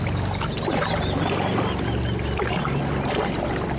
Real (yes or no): yes